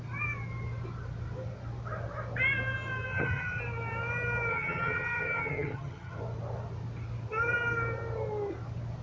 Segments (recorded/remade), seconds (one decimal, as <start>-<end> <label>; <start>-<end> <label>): 0.0-3.1 recorded; 3.1-3.6 remade; 3.6-4.5 recorded; 4.5-6.2 remade; 6.2-9.0 recorded